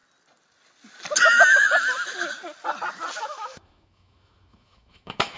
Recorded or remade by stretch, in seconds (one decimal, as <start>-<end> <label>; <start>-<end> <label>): 0.0-3.2 recorded; 3.2-5.4 remade